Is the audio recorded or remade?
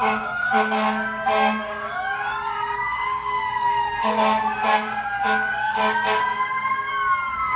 remade